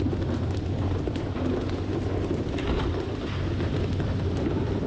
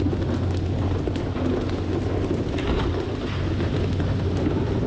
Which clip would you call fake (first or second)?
first